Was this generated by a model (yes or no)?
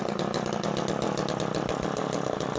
no